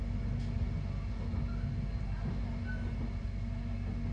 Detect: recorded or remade recorded